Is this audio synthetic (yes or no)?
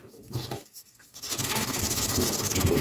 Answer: yes